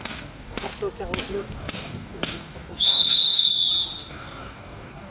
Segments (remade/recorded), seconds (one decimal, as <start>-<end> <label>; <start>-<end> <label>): 0.0-0.7 remade; 0.7-1.3 recorded; 1.3-3.5 remade; 3.5-4.1 recorded; 4.1-5.1 remade